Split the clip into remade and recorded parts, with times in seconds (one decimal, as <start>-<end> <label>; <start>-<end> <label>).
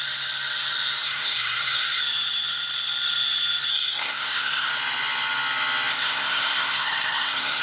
0.0-1.0 recorded; 1.0-2.0 remade; 2.0-3.7 recorded; 3.7-4.7 remade; 4.7-5.9 recorded; 5.9-7.6 remade